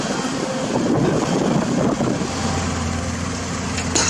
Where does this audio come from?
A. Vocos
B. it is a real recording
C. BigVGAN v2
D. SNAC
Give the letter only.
B